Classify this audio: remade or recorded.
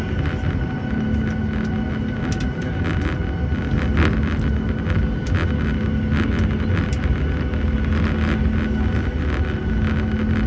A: recorded